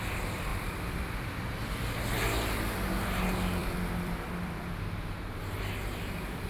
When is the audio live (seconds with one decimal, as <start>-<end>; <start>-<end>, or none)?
0.0-0.5; 1.6-3.6; 4.6-6.5